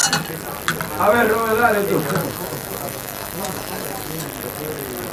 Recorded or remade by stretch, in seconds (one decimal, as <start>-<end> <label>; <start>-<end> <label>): 0.0-2.2 recorded; 2.2-4.2 remade; 4.2-5.1 recorded